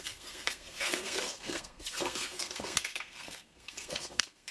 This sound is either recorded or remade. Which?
remade